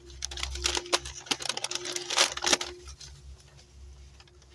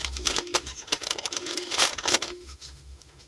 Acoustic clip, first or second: first